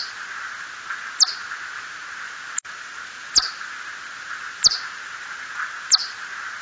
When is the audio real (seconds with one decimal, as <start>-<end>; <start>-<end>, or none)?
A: 0.0-6.6